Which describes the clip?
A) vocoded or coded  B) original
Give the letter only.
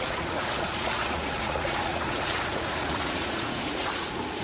A